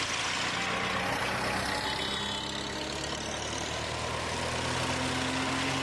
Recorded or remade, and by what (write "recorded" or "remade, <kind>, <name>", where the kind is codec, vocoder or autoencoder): recorded